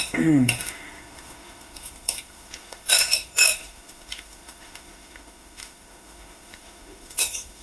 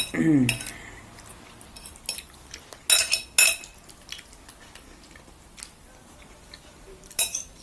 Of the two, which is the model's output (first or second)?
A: first